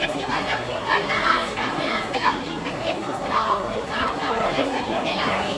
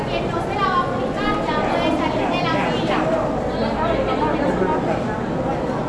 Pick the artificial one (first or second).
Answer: first